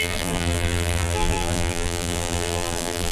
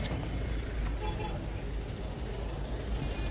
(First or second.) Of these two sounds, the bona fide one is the second